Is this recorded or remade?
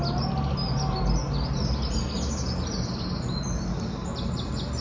recorded